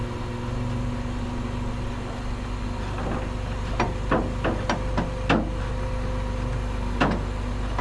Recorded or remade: recorded